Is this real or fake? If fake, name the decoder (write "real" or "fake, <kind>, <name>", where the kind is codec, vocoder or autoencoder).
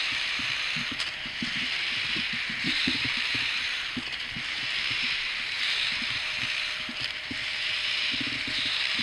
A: fake, vocoder, BigVGAN v2